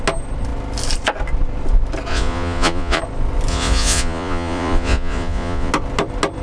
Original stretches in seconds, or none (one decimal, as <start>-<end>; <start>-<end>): 0.0-2.1; 3.0-3.5; 5.7-6.4